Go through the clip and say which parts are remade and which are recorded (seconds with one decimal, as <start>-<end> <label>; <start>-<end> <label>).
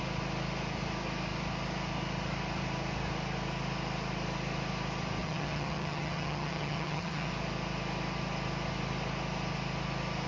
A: 0.0-5.2 recorded; 5.2-7.3 remade; 7.3-10.3 recorded